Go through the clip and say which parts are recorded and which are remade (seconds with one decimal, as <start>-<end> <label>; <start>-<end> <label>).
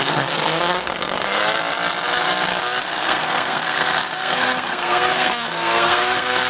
0.0-1.4 remade; 1.4-2.8 recorded; 2.8-6.5 remade